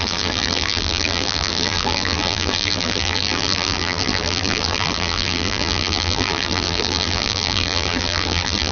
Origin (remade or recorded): remade